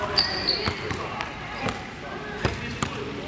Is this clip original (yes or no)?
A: yes